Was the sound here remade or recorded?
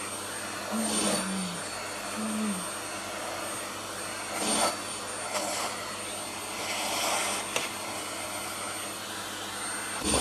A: recorded